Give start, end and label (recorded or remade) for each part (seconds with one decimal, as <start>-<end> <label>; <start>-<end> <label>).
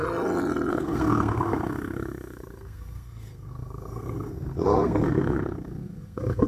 0.0-0.7 recorded; 0.7-6.5 remade